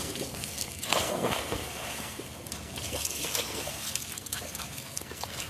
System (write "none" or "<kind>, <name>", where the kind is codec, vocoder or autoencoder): codec, SNAC